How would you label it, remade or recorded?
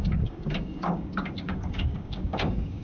remade